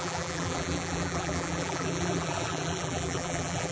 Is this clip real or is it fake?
fake